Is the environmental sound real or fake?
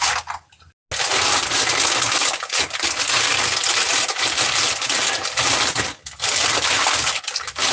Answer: real